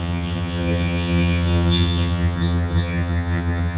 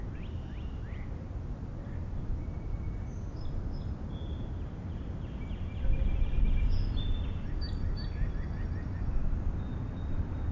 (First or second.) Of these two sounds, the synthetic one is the first